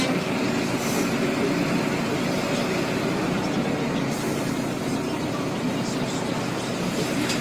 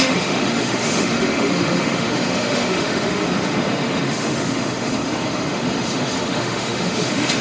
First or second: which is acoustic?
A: first